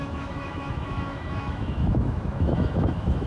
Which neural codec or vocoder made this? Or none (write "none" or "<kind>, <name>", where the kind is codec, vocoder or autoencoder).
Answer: autoencoder, DAC-VAE